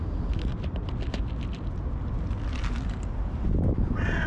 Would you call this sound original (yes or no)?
yes